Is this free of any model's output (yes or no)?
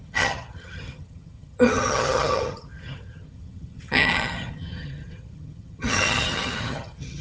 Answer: no